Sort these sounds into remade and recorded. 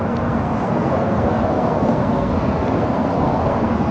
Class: remade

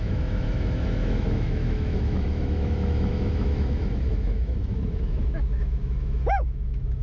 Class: remade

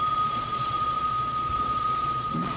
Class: remade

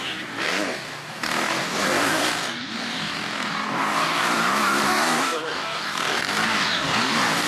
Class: remade